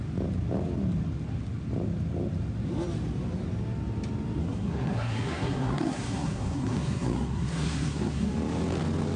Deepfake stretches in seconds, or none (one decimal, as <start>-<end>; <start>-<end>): 4.4-8.3